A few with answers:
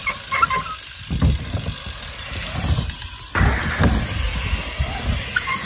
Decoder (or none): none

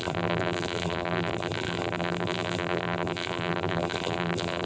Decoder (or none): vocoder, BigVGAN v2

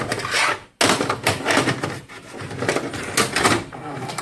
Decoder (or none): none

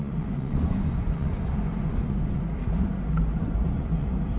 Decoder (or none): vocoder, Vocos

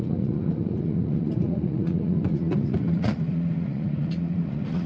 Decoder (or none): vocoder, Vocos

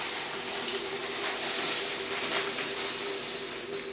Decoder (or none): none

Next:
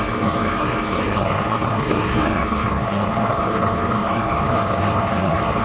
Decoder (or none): codec, SNAC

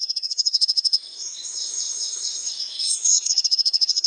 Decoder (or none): codec, SNAC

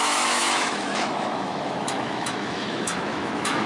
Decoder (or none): autoencoder, DAC-VAE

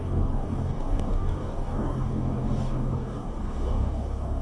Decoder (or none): codec, DAC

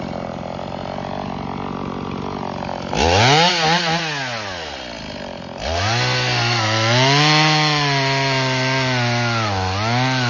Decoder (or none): none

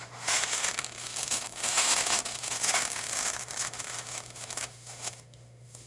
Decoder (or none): autoencoder, DAC-VAE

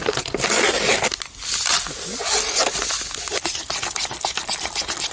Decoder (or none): none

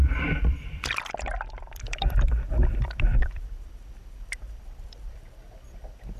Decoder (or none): vocoder, BigVGAN v2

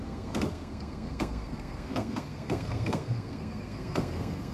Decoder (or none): codec, SNAC